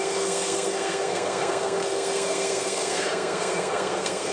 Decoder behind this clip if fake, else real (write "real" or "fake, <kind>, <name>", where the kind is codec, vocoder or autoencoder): fake, codec, SNAC